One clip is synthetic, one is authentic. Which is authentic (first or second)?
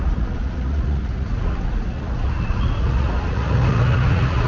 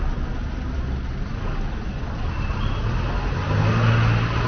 second